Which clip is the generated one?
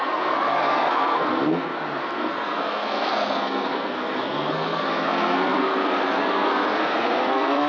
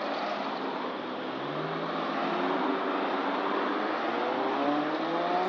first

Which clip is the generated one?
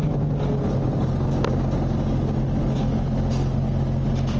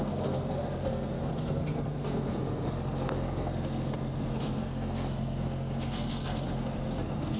second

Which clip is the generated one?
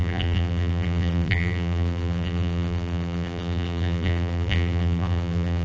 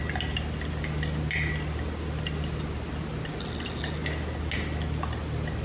first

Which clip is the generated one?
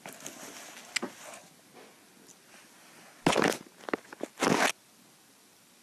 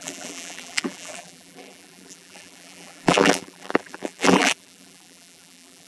second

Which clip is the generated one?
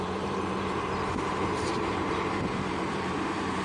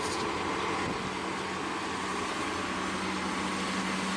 first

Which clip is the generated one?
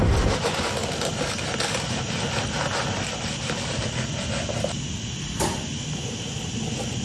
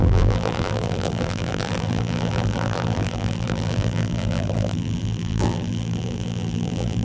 second